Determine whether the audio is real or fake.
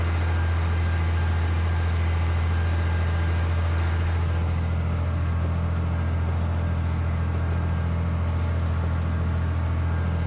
real